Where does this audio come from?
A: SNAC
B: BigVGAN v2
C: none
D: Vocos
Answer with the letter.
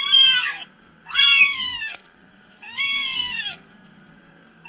A